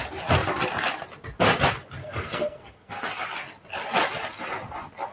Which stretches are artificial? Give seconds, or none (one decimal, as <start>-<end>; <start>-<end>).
2.0-3.1